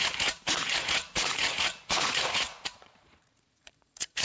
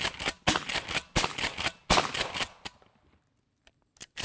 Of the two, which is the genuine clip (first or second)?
second